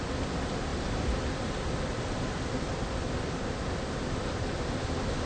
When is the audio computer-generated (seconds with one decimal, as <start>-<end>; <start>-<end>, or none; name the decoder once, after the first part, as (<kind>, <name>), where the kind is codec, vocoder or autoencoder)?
none